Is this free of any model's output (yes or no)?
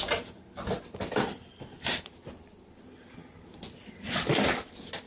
yes